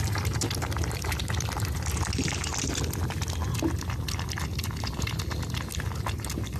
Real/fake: real